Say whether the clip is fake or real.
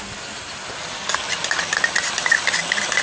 real